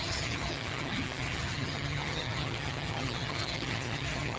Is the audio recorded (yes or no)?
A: no